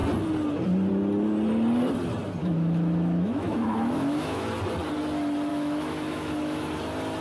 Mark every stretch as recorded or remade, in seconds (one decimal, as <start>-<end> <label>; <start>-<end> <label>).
0.0-2.4 recorded; 2.4-4.4 remade; 4.4-5.5 recorded; 5.5-6.7 remade; 6.7-7.2 recorded